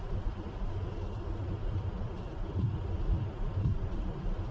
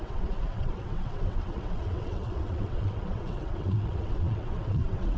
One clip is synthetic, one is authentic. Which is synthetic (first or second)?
second